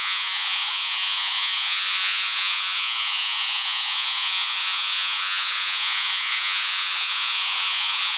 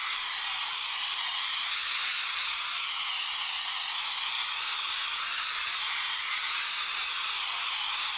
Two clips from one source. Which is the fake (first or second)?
first